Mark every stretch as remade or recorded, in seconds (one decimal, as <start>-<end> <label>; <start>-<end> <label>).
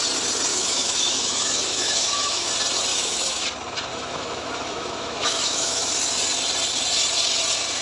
0.0-0.5 recorded; 0.5-2.5 remade; 2.5-2.9 recorded; 2.9-3.4 remade; 3.4-3.9 recorded; 3.9-5.9 remade; 5.9-7.8 recorded